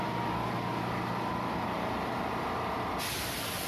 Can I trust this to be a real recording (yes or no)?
yes